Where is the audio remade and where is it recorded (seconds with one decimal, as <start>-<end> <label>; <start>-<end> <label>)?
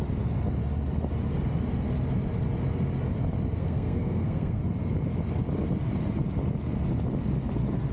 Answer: 0.0-3.6 recorded; 3.6-4.6 remade; 4.6-7.9 recorded